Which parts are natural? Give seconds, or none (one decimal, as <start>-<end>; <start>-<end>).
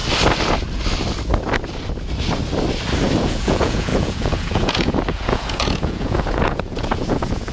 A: 0.0-3.2